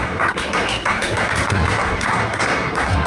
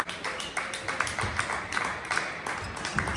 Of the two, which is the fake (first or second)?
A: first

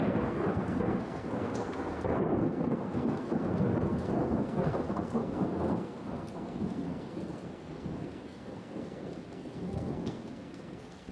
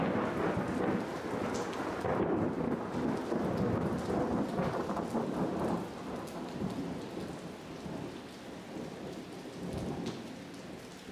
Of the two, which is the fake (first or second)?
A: first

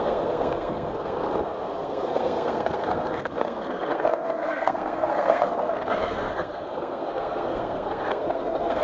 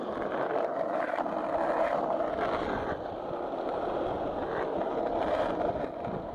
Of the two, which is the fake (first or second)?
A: first